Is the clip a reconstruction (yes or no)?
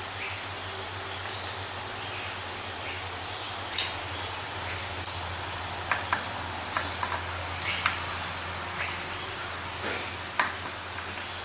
no